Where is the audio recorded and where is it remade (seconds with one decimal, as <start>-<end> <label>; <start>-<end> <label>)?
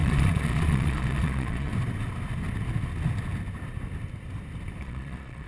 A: 0.0-1.7 remade; 1.7-4.8 recorded; 4.8-5.5 remade